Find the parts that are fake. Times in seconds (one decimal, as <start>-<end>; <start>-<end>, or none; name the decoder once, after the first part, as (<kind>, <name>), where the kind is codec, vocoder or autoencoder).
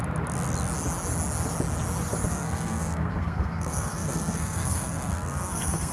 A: 2.3-5.9 (codec, SNAC)